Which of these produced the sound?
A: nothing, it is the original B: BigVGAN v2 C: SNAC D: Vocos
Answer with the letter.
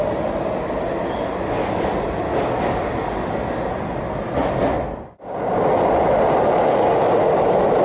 A